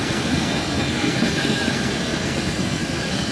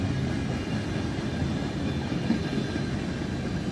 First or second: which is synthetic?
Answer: first